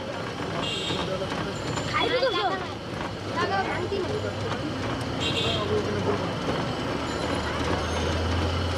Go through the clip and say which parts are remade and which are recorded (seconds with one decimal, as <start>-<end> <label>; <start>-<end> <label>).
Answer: 0.0-2.7 recorded; 2.7-3.9 remade; 3.9-8.8 recorded